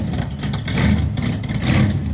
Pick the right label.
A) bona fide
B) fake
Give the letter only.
A